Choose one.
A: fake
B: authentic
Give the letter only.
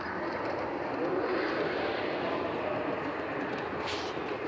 B